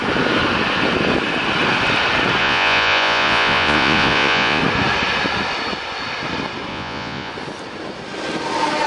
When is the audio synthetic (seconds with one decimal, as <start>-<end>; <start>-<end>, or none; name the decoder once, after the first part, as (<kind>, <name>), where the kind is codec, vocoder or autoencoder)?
2.4-4.6 (vocoder, Vocos); 6.7-7.3